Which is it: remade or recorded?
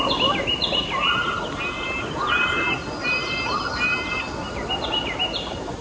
recorded